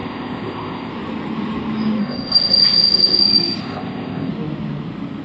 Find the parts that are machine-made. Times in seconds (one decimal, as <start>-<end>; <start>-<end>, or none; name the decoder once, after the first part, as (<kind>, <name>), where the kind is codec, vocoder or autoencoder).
0.0-0.9 (codec, ZipCodec); 2.0-3.2; 3.6-4.3